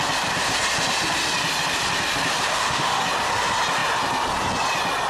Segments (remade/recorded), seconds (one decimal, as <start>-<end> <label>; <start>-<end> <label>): 0.0-2.5 recorded; 2.5-3.0 remade; 3.0-5.1 recorded